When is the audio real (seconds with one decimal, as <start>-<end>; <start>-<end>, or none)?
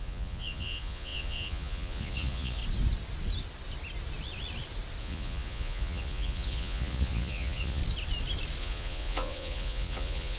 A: 2.6-5.0; 7.8-8.6